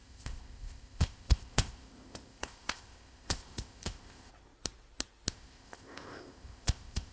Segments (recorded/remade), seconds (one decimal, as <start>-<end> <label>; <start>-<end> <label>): 0.0-4.3 remade; 4.3-5.3 recorded; 5.3-7.1 remade